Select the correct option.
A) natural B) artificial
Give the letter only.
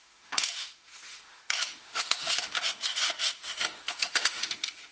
B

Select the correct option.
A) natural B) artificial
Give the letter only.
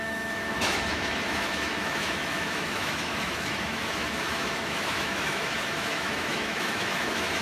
B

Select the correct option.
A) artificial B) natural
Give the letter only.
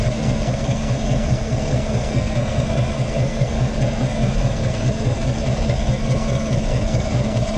A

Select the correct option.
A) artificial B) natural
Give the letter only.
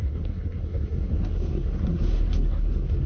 A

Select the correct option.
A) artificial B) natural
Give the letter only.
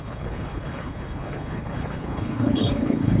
A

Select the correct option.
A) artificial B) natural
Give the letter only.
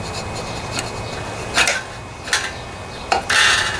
B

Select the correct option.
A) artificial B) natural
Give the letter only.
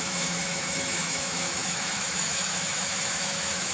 A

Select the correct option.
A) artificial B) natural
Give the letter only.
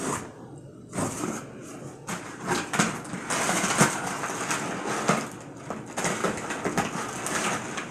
B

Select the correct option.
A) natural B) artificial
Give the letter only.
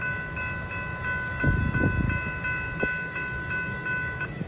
A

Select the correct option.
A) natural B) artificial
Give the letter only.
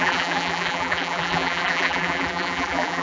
B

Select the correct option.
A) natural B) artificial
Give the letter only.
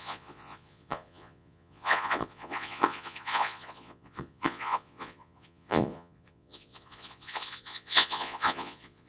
B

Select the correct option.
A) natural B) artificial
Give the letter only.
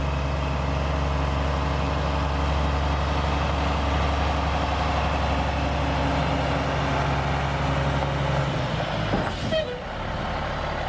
A